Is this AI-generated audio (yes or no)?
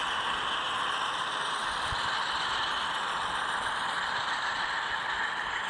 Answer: no